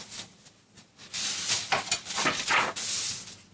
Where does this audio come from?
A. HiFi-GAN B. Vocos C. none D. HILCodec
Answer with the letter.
C